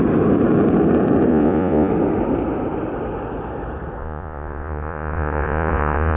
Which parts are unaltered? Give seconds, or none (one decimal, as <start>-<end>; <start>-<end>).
0.0-1.3; 1.9-4.0